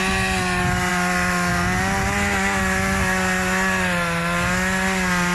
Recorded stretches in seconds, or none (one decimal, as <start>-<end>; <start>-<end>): 0.0-5.3